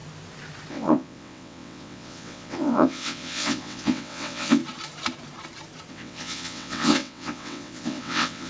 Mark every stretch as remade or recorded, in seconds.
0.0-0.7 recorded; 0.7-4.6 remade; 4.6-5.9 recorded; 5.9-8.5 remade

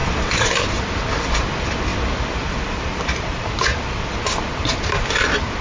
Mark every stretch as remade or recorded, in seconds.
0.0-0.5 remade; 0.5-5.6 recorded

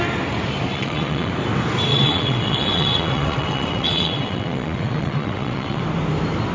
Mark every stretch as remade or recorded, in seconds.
0.0-0.7 recorded; 0.7-1.3 remade; 1.3-1.9 recorded; 1.9-5.8 remade; 5.8-6.5 recorded

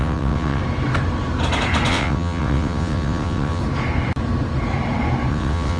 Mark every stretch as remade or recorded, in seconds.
0.0-0.6 remade; 0.6-1.9 recorded; 1.9-3.6 remade; 3.6-5.3 recorded; 5.3-5.8 remade

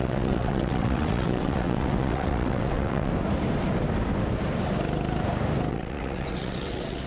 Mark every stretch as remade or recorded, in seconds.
0.0-3.1 remade; 3.1-5.7 recorded; 5.7-7.1 remade

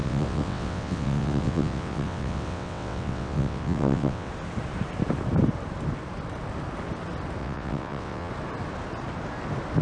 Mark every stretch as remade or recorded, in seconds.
0.0-4.3 remade; 4.3-7.4 recorded; 7.4-8.3 remade; 8.3-9.8 recorded

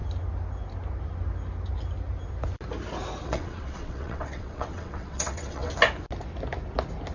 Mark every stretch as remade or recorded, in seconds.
0.0-3.2 recorded; 3.2-5.7 remade; 5.7-7.1 recorded

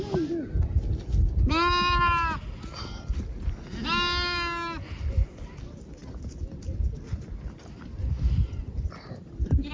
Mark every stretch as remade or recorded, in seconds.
0.0-9.7 recorded